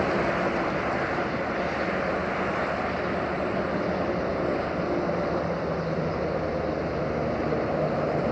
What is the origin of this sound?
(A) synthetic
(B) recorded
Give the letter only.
B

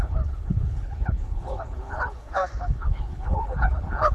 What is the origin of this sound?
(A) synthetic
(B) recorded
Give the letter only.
A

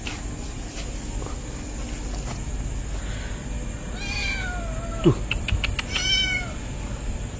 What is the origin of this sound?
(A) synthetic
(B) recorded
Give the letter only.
B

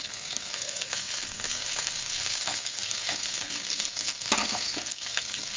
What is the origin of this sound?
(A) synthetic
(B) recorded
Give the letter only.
A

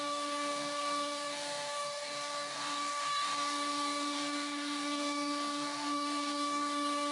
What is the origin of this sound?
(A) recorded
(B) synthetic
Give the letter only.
B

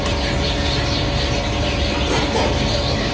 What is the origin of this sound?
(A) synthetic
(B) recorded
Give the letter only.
B